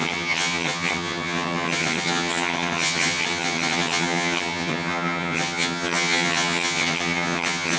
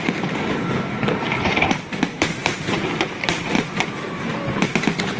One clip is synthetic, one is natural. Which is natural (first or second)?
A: second